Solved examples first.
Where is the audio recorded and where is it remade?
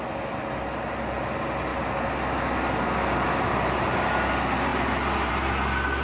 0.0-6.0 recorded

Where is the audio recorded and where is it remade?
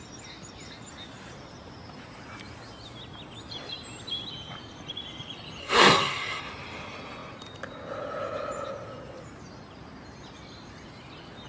0.0-5.6 recorded; 5.6-6.4 remade; 6.4-11.5 recorded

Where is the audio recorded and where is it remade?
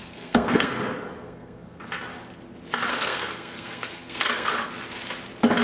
0.0-0.7 remade; 0.7-1.2 recorded; 1.2-1.8 remade; 1.8-2.9 recorded; 2.9-4.7 remade; 4.7-5.6 recorded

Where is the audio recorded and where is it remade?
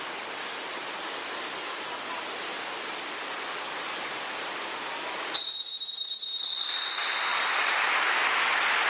0.0-8.9 recorded